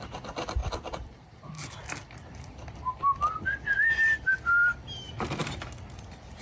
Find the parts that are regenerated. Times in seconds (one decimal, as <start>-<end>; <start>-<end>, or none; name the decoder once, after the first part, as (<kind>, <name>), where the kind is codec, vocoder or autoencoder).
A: 0.6-2.4 (vocoder, BigVGAN v2)